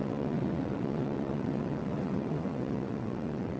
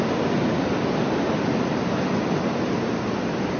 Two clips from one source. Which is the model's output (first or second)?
first